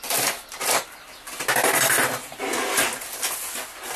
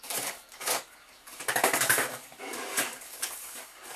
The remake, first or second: second